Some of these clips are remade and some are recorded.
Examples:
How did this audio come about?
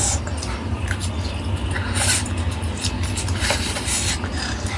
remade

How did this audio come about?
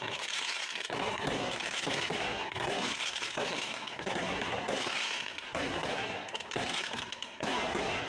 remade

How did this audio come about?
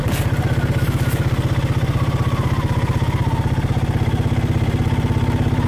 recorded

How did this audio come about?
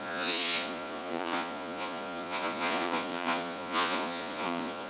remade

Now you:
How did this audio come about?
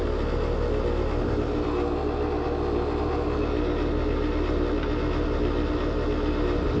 recorded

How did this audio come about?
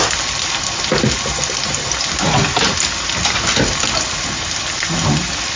recorded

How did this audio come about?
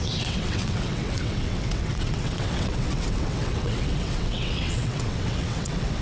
remade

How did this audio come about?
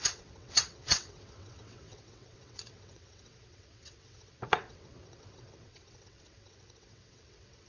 remade